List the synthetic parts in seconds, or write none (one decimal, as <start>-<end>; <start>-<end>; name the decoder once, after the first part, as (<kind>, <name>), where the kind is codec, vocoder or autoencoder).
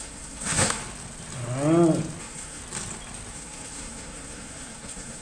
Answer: 0.0-0.8 (codec, SNAC); 2.2-2.6; 3.3-5.2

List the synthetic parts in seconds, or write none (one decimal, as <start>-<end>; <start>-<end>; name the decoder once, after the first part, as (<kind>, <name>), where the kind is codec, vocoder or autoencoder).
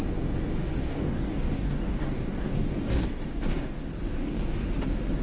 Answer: 0.8-3.8 (codec, DAC); 4.2-4.7